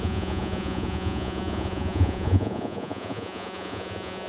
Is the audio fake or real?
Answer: fake